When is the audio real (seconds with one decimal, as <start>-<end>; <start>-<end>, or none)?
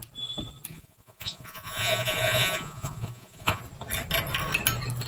0.0-0.7; 3.6-5.1